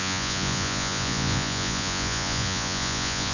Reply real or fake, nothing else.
fake